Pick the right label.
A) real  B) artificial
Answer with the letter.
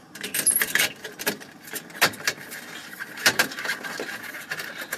B